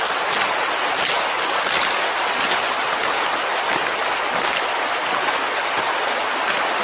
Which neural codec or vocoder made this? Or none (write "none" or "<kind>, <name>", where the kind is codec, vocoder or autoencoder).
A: none